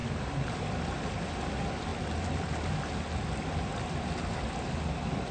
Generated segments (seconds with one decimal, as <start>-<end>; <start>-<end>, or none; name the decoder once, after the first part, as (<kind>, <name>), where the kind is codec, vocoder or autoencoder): none